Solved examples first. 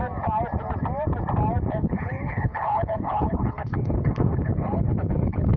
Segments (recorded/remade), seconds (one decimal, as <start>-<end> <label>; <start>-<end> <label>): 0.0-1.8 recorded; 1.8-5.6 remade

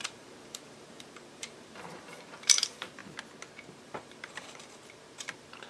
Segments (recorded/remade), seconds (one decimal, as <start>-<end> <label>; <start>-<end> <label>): 0.0-3.0 remade; 3.0-3.7 recorded; 3.7-5.7 remade

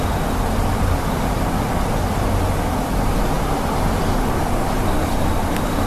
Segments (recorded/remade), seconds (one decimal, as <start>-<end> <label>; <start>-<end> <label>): 0.0-5.9 recorded

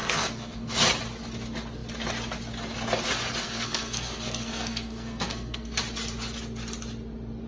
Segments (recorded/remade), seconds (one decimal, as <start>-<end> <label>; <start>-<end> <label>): 0.0-0.7 remade; 0.7-3.4 recorded; 3.4-5.8 remade; 5.8-7.5 recorded

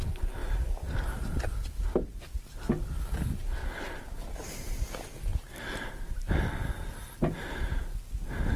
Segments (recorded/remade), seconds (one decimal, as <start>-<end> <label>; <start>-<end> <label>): 0.0-3.6 recorded; 3.6-4.8 remade; 4.8-5.3 recorded; 5.3-6.3 remade; 6.3-8.6 recorded